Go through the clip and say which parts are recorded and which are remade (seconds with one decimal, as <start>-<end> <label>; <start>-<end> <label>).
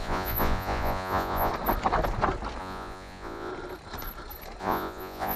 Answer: 0.0-1.5 remade; 1.5-2.6 recorded; 2.6-3.5 remade; 3.5-4.6 recorded; 4.6-5.4 remade